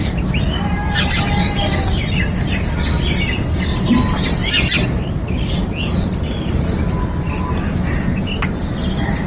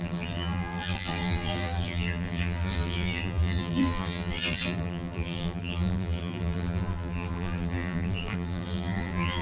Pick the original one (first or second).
first